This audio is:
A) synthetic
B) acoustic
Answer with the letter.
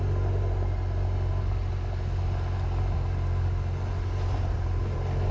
B